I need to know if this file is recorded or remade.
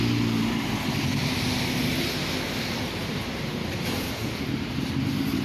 recorded